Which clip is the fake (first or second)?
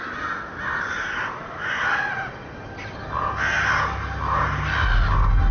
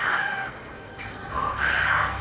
second